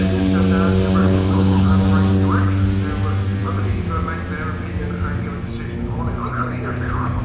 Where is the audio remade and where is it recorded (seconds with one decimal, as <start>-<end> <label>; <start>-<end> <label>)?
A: 0.0-1.0 recorded; 1.0-1.7 remade; 1.7-6.3 recorded; 6.3-7.2 remade